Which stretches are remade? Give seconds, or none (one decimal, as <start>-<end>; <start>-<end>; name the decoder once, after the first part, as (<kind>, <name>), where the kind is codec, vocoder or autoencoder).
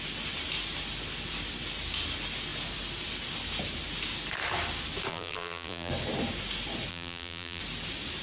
5.1-5.9 (vocoder, BigVGAN v2); 6.9-7.6